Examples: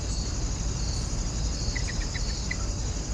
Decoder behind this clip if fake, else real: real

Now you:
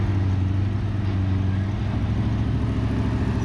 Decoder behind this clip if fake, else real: real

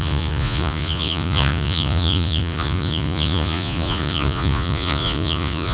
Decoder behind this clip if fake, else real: fake, vocoder, Vocos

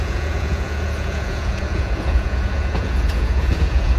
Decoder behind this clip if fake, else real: fake, vocoder, Vocos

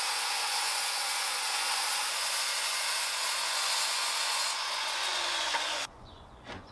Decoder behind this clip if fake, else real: fake, vocoder, Vocos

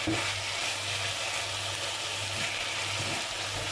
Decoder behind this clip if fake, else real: real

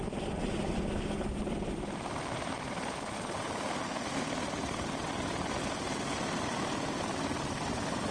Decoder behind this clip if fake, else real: real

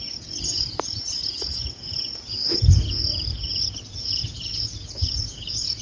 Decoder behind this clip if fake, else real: fake, vocoder, Vocos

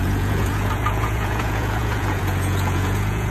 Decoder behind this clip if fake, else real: fake, vocoder, Vocos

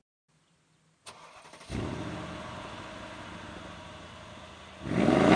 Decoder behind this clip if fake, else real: real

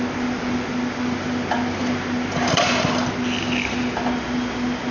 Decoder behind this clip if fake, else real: real